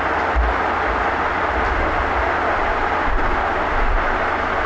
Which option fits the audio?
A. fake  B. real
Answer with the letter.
B